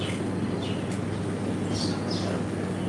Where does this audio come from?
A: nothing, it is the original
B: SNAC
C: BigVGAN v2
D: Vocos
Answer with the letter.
A